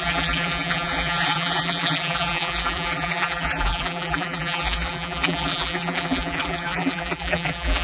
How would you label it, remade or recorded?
remade